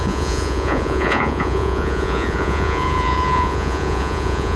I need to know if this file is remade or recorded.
remade